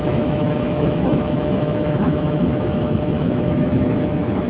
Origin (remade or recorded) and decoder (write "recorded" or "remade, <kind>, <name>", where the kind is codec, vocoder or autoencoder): remade, autoencoder, DAC-VAE